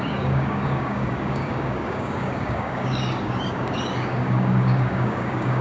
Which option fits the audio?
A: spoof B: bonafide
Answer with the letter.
A